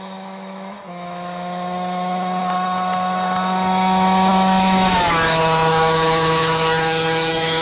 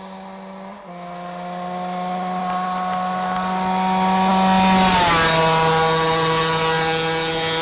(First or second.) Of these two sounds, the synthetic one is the first